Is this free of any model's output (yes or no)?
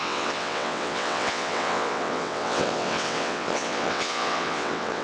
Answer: no